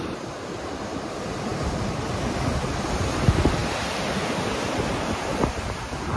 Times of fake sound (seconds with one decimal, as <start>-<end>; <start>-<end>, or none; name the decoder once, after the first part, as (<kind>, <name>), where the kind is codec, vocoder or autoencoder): none